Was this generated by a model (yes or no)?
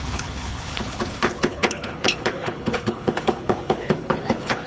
yes